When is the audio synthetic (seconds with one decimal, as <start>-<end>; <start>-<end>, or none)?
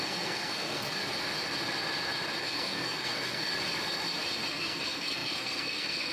0.0-1.0; 2.4-3.5; 4.5-6.1